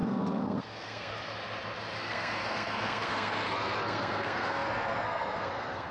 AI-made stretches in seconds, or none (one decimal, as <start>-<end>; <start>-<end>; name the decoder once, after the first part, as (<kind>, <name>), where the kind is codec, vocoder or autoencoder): 0.0-1.1 (codec, SNAC); 2.0-5.9